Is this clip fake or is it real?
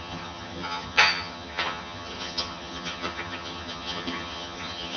fake